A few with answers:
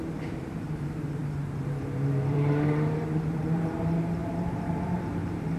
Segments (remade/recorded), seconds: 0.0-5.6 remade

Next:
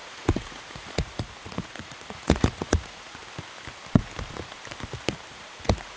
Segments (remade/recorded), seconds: 0.0-3.2 remade; 3.2-5.3 recorded; 5.3-6.0 remade